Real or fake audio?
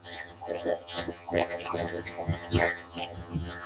fake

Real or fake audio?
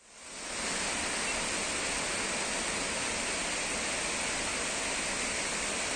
real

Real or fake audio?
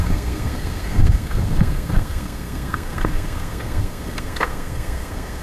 fake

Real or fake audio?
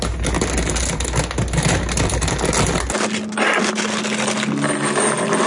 real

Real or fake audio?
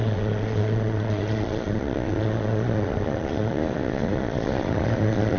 fake